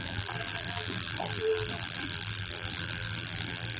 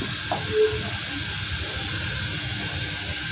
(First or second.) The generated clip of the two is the first